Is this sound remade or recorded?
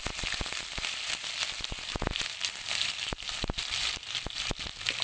recorded